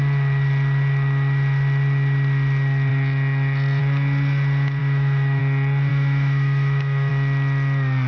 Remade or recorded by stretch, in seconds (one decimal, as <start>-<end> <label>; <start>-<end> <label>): 0.0-4.8 recorded; 4.8-5.4 remade; 5.4-5.9 recorded; 5.9-7.1 remade; 7.1-8.1 recorded